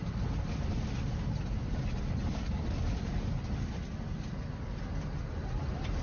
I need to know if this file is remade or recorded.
recorded